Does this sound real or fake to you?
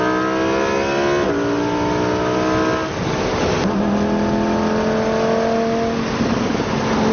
real